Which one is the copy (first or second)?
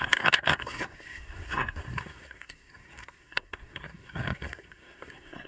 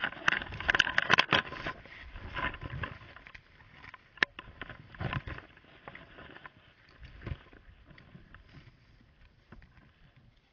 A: first